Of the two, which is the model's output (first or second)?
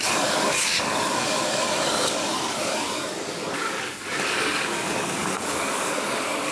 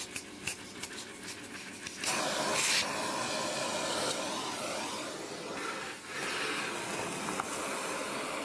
first